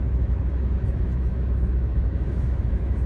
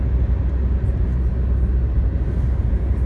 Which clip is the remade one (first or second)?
first